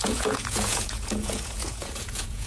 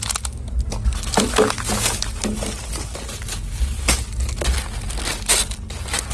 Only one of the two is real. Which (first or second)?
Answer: second